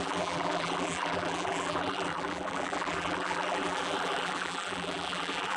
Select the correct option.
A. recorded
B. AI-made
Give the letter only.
B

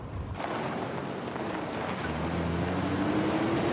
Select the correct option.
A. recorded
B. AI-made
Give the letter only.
A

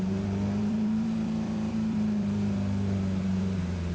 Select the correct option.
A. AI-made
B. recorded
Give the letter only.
A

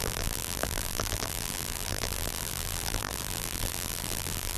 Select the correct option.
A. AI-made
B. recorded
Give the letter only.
A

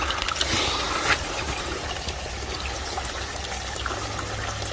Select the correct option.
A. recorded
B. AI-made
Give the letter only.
A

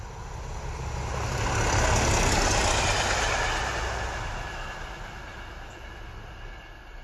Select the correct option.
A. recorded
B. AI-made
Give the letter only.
A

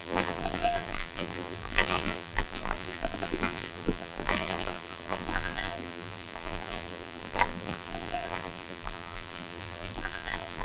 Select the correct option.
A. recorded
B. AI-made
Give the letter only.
B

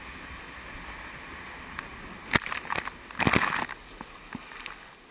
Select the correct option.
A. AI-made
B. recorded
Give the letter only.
B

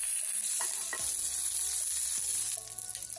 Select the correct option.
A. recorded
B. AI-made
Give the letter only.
A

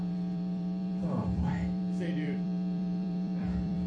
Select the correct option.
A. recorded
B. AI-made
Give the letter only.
B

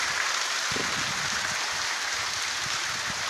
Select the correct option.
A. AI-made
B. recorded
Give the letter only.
B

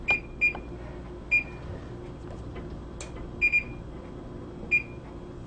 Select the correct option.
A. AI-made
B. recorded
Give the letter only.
B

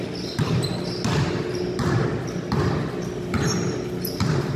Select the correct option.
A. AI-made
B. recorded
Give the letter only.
B